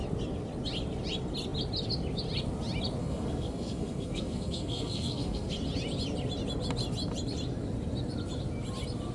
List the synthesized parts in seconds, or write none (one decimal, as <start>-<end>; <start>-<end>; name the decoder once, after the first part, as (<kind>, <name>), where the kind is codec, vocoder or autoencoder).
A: 3.0-5.5 (codec, SNAC)